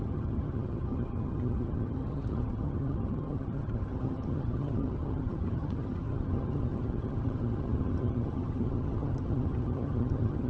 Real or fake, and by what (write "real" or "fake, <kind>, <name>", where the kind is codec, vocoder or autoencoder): fake, vocoder, HiFi-GAN